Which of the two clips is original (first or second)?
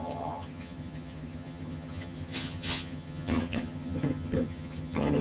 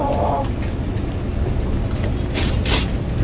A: second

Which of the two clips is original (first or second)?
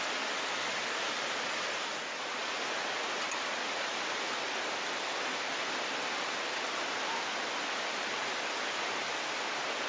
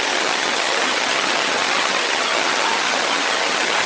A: first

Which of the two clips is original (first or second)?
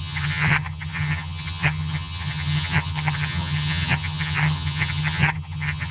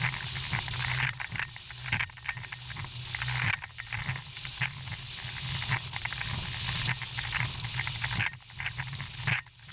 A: second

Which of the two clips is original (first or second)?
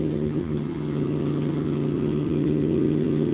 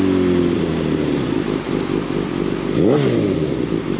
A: second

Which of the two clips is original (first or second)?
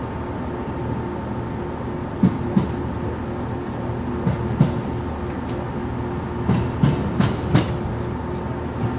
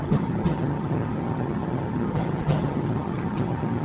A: first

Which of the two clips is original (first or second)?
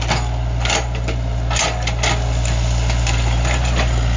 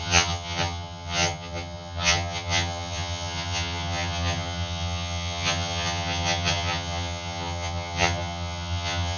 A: first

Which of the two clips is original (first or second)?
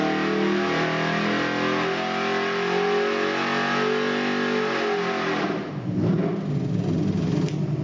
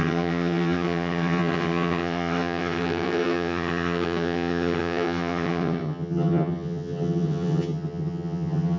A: first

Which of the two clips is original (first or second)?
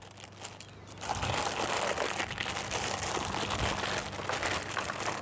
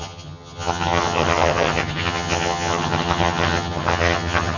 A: first